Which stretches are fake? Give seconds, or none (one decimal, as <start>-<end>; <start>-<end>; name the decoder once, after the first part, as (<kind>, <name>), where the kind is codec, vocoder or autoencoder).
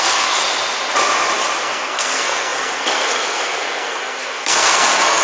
0.0-0.4 (codec, SNAC); 1.6-5.2